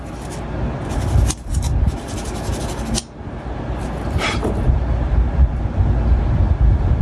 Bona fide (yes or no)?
yes